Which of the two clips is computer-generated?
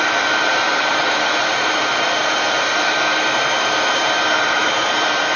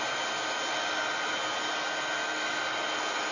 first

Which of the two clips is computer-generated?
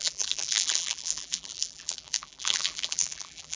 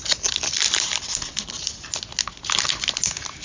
first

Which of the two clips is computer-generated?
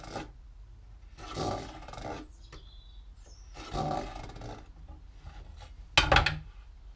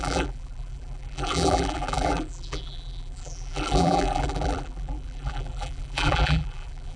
second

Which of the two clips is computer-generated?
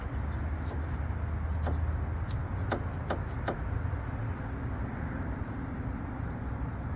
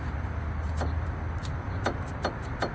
second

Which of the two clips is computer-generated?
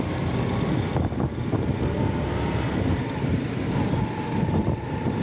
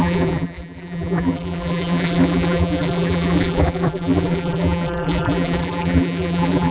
second